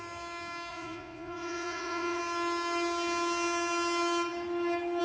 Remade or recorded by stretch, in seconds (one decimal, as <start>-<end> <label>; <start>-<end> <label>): 0.0-0.7 recorded; 0.7-2.2 remade; 2.2-5.0 recorded